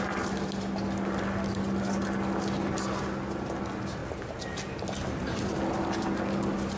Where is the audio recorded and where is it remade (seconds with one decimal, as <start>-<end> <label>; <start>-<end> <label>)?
0.0-6.8 recorded